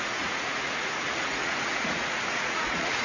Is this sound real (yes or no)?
no